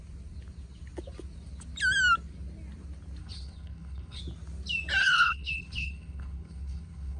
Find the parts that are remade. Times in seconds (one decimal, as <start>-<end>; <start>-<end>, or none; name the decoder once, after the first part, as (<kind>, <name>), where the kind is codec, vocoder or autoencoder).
3.2-4.2 (codec, HILCodec); 5.0-7.2